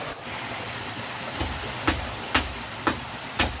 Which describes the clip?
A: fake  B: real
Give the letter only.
B